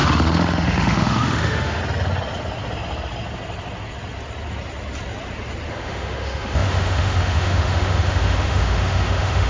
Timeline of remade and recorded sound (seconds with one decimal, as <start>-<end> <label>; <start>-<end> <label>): 0.0-1.8 remade; 1.8-5.7 recorded; 5.7-9.5 remade